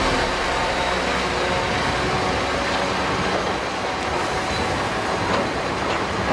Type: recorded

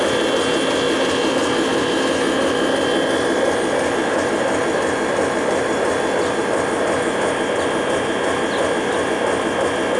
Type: recorded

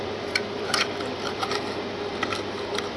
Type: recorded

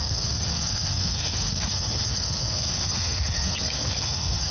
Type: remade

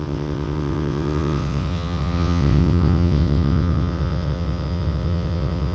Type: remade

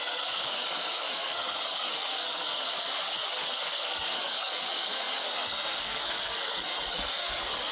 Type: remade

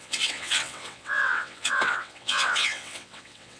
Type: remade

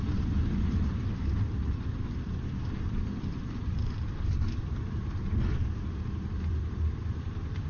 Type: remade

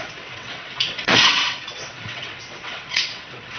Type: remade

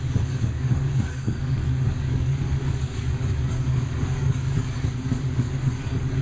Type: remade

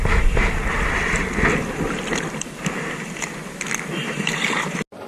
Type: recorded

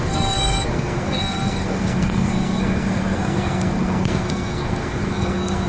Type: remade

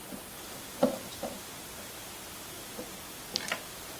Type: recorded